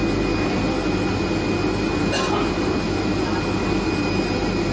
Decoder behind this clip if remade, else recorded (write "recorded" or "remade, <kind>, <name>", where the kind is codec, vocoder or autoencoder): recorded